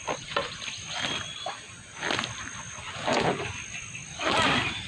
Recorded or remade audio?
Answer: recorded